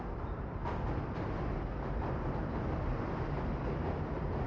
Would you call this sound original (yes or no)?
yes